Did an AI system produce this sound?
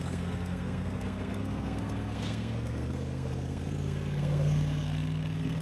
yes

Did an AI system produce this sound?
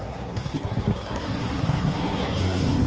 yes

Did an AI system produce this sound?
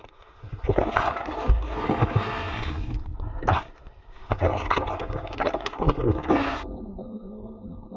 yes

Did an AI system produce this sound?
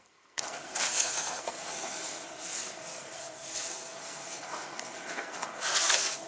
yes